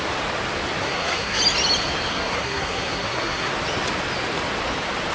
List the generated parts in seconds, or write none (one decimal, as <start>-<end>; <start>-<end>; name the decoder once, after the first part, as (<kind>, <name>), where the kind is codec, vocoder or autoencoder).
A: 0.8-1.4 (codec, SNAC); 2.1-3.5